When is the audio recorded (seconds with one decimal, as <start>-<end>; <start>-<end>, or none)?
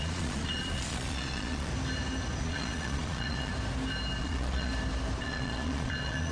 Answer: 1.7-2.4; 3.5-4.2; 4.7-5.2